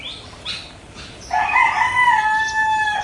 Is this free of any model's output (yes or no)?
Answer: yes